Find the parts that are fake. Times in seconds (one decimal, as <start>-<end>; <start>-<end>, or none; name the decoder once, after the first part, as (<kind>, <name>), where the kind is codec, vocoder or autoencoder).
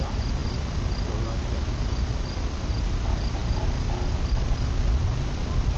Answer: none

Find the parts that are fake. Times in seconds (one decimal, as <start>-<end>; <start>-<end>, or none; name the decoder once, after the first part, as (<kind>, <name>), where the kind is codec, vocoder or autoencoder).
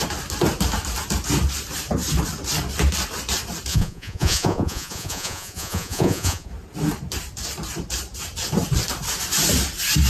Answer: 3.7-6.5 (vocoder, Vocos)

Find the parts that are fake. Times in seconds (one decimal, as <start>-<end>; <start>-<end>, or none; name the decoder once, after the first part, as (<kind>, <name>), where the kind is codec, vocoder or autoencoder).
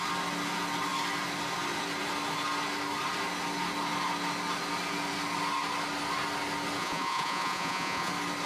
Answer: 6.8-8.1 (vocoder, Vocos)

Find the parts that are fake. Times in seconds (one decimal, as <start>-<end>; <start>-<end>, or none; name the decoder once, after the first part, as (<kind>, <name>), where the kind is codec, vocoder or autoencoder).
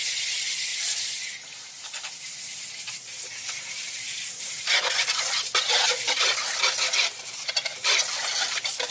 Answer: none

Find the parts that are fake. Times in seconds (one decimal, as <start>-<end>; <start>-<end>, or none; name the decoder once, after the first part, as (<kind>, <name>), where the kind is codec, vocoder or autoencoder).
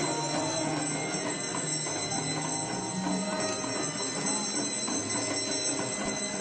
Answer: none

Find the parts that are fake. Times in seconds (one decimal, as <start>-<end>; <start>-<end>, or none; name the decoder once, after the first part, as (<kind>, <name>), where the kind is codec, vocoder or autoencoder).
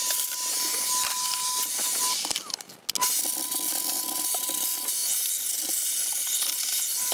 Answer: none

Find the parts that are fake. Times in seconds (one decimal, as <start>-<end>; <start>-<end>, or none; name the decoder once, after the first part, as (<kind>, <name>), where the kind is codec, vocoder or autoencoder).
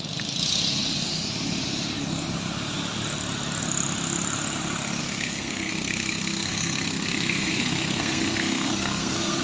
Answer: 5.0-9.4 (codec, SNAC)